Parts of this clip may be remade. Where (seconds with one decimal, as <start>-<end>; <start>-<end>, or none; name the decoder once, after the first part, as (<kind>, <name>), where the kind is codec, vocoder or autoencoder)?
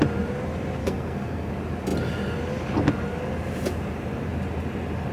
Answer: 0.8-1.5 (codec, SNAC)